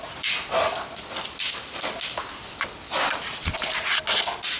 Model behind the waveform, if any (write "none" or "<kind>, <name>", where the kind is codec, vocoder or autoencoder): none